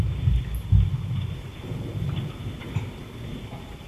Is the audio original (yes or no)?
yes